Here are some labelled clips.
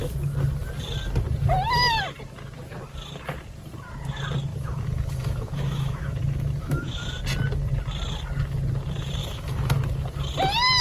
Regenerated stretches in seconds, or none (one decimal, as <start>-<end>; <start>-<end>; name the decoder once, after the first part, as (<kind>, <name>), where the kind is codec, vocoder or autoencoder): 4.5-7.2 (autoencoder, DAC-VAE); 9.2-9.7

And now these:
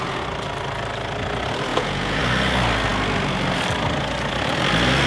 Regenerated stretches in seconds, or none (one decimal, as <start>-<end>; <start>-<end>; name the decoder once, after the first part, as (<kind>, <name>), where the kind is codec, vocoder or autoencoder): 1.7-2.2 (vocoder, Vocos)

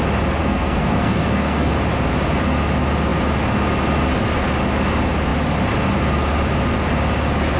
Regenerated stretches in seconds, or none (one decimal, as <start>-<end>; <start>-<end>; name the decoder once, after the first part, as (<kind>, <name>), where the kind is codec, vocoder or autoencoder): 0.4-1.7 (codec, SNAC)